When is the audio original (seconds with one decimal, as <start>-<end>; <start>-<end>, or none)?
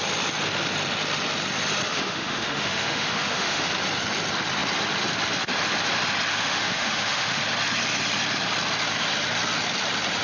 0.0-1.9; 3.7-6.3; 7.4-10.2